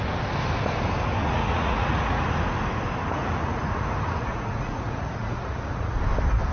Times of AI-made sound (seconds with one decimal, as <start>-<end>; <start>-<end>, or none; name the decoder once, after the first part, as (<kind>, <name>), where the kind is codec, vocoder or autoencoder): 1.2-2.2 (vocoder, Vocos); 3.1-6.0